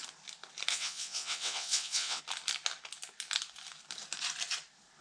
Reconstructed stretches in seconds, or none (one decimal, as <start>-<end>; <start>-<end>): 0.7-2.2